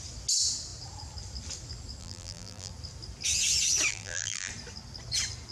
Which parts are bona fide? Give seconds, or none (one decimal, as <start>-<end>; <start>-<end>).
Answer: 0.0-2.0; 2.7-3.9; 4.5-5.5